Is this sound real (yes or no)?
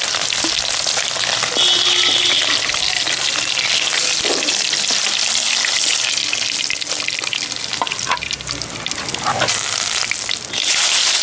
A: yes